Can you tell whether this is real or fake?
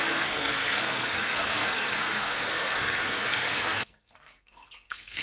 fake